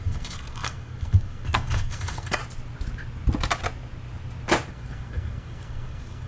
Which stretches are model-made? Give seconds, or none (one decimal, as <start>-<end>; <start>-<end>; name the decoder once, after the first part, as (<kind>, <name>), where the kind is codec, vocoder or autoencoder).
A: 0.0-2.4 (codec, SNAC); 4.7-6.3